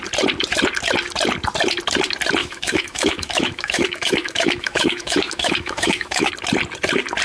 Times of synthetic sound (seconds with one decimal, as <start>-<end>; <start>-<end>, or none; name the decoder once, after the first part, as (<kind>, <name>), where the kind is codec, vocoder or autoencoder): 2.4-6.3 (autoencoder, DAC-VAE)